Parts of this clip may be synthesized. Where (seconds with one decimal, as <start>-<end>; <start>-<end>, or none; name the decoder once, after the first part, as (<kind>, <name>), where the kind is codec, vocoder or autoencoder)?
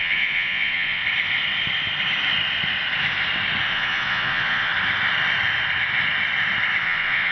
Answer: 0.0-1.0 (vocoder, Vocos); 3.7-4.7; 6.8-7.3